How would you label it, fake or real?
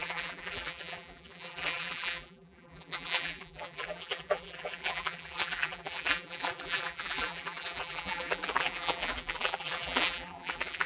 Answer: fake